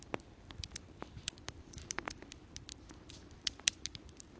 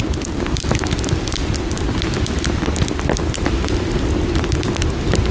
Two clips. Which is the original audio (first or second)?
second